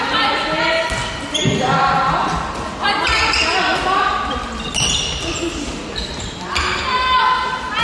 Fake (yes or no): no